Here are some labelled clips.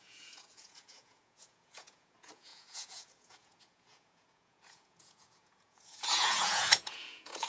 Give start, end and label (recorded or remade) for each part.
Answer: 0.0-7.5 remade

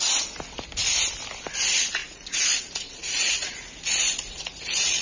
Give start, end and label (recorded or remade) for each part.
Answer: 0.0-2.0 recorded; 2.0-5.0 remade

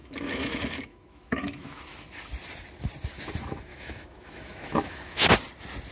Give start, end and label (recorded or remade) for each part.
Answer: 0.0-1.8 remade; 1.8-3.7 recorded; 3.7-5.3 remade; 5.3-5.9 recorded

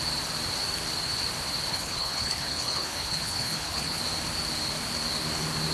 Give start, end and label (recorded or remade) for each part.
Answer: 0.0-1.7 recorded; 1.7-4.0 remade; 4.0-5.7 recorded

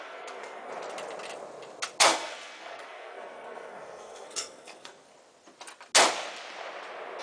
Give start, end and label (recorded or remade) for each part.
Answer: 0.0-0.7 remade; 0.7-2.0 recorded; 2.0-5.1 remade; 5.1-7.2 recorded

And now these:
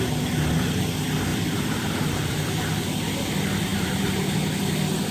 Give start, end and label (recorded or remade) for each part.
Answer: 0.0-1.3 recorded; 1.3-2.7 remade; 2.7-3.7 recorded; 3.7-4.4 remade; 4.4-5.1 recorded